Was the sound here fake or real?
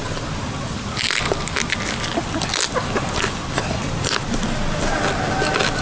real